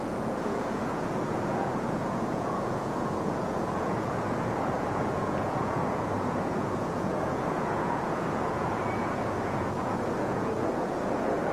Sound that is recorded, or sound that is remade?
remade